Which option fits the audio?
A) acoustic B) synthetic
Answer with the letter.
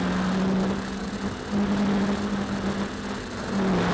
A